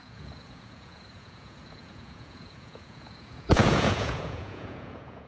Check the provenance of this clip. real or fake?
fake